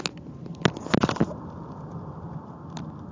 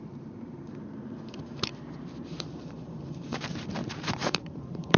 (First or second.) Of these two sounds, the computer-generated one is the second